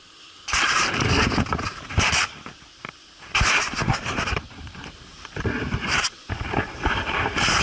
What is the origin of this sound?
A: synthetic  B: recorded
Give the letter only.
A